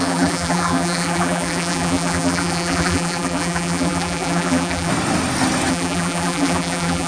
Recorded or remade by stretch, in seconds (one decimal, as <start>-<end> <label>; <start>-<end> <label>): 0.0-4.9 remade; 4.9-5.7 recorded; 5.7-7.1 remade